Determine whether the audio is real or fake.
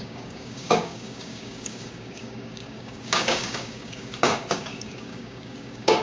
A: fake